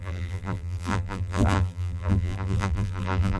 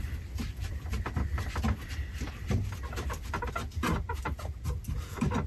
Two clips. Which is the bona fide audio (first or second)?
second